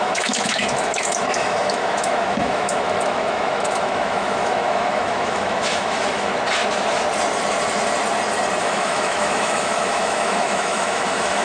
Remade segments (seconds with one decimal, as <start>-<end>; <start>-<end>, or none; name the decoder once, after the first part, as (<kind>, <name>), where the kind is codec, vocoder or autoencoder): 0.0-6.3 (autoencoder, DAC-VAE); 8.6-11.4